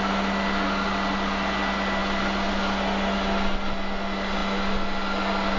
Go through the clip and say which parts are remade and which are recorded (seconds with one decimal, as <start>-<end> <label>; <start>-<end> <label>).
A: 0.0-5.6 recorded